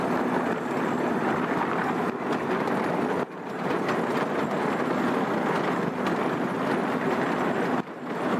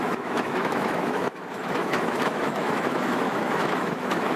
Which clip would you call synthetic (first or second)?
second